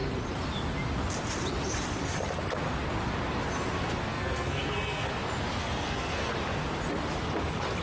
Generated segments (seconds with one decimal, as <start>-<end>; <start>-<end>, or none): 4.1-5.1; 5.6-6.3